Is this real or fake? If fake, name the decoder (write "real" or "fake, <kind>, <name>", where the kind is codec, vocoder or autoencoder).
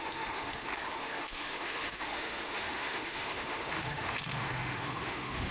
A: fake, autoencoder, DAC-VAE